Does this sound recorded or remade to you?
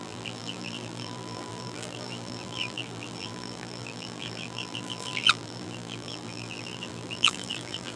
remade